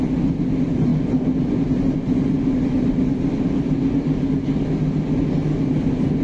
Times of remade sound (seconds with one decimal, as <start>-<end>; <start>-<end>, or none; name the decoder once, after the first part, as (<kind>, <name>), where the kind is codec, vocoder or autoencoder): none